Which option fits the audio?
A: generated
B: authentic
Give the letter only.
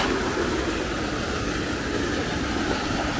B